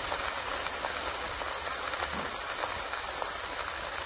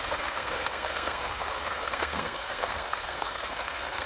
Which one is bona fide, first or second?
first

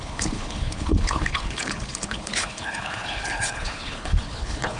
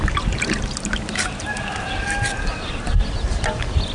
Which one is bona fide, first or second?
second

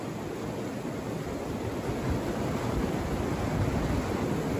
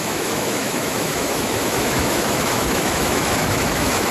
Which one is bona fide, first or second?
first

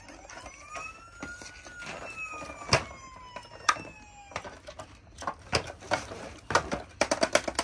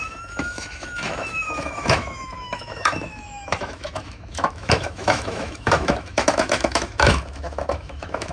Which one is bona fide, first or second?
first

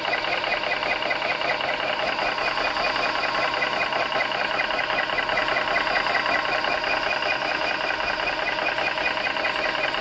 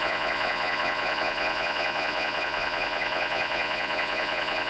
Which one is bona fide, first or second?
first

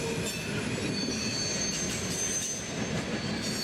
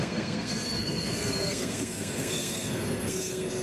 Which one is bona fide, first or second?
first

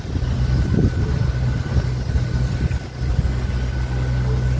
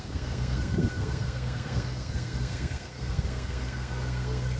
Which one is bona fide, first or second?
first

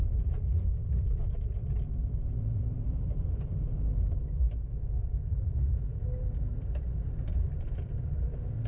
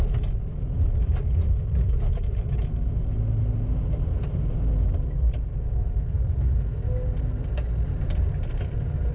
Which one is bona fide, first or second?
second